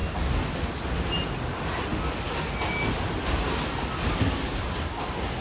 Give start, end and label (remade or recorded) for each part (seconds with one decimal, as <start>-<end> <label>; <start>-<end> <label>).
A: 0.0-5.4 recorded